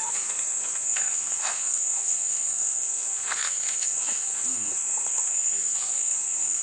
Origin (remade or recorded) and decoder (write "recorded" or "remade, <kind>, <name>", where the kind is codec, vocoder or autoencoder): remade, codec, SNAC